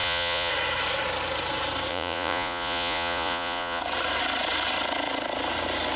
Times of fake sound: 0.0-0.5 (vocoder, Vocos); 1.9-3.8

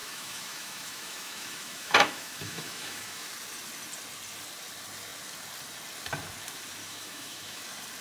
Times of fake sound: 0.0-3.3 (autoencoder, DAC-VAE); 6.8-7.6